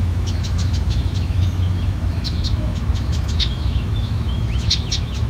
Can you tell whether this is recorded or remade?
remade